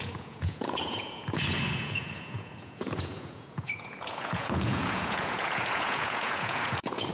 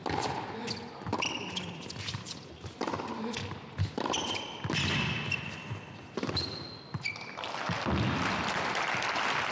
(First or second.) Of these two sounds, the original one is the second